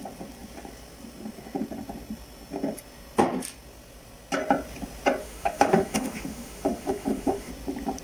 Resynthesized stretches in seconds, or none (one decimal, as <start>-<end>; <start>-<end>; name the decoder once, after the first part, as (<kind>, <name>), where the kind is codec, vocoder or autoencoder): 5.2-7.5 (autoencoder, DAC-VAE)